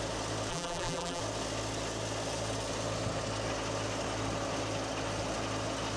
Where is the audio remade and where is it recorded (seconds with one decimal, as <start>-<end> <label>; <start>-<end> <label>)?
0.0-0.5 recorded; 0.5-1.2 remade; 1.2-6.0 recorded